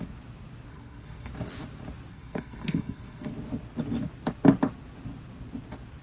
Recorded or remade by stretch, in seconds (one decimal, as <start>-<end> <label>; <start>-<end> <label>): 0.0-0.7 recorded; 0.7-1.3 remade; 1.3-2.1 recorded; 2.1-3.3 remade; 3.3-6.0 recorded